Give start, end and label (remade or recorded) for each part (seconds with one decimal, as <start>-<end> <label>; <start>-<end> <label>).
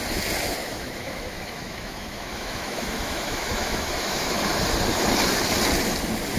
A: 0.0-0.6 recorded; 0.6-4.4 remade; 4.4-6.4 recorded